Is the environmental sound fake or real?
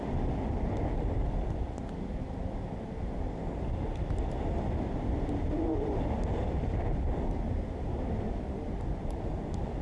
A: real